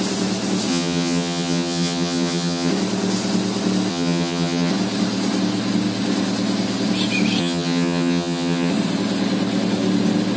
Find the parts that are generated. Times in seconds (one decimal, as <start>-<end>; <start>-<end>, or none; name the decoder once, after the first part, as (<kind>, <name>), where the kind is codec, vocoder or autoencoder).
0.7-2.7 (vocoder, HiFi-GAN); 3.9-4.7; 7.4-8.7